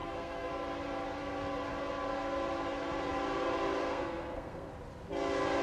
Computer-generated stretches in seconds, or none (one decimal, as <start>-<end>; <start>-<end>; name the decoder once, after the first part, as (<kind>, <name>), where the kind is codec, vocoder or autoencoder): 0.0-0.5 (codec, SNAC); 3.8-4.7